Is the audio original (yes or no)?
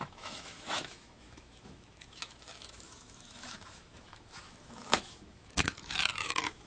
no